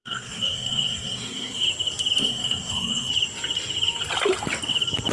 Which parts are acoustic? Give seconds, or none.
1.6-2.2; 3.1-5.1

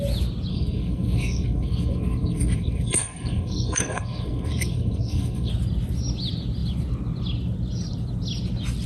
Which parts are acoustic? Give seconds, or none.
0.0-0.5; 5.5-8.9

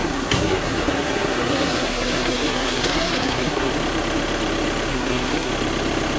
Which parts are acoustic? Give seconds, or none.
3.7-4.9; 5.5-6.2

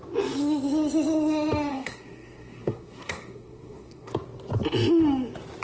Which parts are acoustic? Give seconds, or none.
0.0-1.7; 4.1-5.6

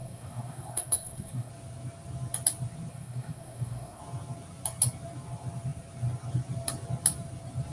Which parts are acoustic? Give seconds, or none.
1.5-2.9; 4.0-7.7

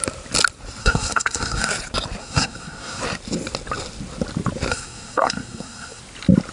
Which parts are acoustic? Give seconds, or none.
0.0-0.8; 1.7-2.2; 3.0-4.7; 6.0-6.5

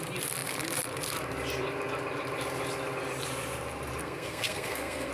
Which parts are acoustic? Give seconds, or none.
0.0-4.0